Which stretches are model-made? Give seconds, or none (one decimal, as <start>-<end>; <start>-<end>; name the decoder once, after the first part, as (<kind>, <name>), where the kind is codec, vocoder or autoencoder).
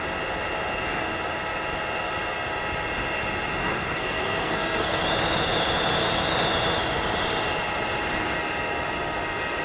3.6-5.0 (codec, SNAC)